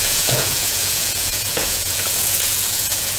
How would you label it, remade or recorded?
remade